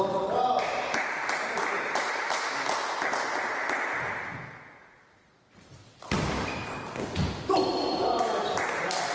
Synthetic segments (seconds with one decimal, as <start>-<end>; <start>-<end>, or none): 4.3-5.0